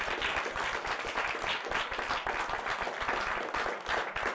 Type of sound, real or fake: real